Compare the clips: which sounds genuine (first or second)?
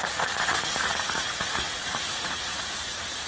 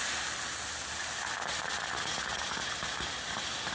second